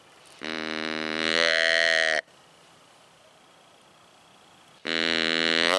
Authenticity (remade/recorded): remade